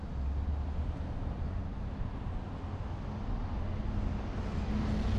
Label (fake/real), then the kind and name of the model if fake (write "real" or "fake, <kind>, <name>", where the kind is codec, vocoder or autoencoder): real